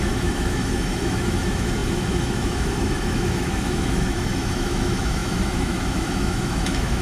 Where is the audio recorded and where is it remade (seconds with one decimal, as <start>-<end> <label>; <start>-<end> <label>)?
0.0-7.0 remade